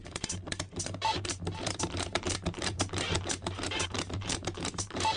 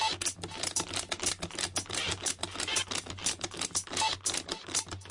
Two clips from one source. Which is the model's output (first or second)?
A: first